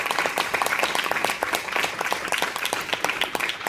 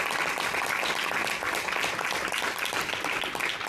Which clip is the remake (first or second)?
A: first